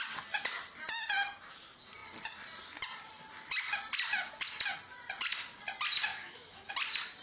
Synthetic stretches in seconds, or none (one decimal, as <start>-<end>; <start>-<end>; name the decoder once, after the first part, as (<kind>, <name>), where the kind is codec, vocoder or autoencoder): 6.1-6.7 (autoencoder, DAC-VAE)